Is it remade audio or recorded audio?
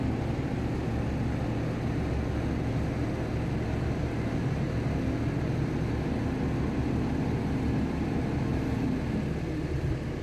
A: recorded